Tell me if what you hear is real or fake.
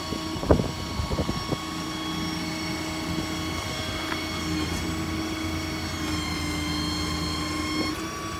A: real